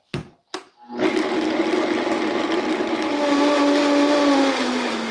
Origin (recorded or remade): recorded